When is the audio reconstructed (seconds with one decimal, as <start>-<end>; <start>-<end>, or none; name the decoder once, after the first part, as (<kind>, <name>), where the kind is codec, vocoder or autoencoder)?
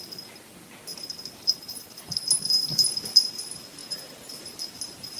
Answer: none